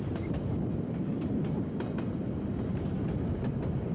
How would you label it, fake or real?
real